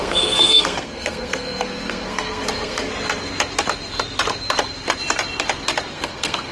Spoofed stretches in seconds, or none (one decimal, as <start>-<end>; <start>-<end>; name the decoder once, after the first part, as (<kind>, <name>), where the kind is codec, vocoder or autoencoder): 0.0-2.9 (codec, SNAC); 5.9-6.5